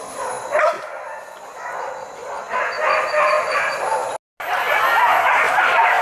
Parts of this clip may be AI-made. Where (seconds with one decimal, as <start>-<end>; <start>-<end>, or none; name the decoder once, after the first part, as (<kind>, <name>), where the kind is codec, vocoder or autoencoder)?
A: none